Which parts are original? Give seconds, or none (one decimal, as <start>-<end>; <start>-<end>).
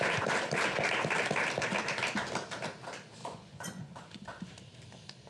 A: 0.0-3.2; 4.2-5.3